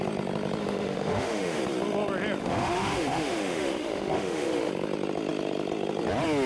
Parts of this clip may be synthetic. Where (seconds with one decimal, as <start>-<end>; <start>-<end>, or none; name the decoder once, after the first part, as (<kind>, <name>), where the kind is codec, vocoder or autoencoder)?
0.6-1.6 (autoencoder, DAC-VAE); 2.4-4.7

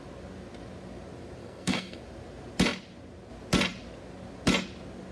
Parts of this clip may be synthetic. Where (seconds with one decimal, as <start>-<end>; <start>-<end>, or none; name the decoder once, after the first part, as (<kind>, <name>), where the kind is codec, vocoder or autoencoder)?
1.4-2.0 (codec, SNAC)

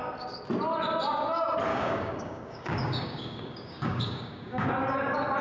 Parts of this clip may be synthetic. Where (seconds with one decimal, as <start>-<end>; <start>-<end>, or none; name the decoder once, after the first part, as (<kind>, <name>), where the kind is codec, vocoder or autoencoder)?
1.7-4.7 (codec, DAC)

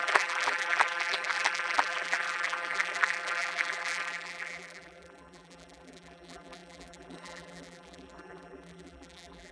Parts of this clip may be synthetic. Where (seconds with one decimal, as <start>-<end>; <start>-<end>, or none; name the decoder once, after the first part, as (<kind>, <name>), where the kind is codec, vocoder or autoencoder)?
0.0-9.5 (vocoder, BigVGAN v2)